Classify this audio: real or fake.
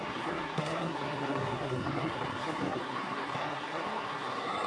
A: fake